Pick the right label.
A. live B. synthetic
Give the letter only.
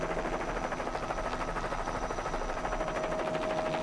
A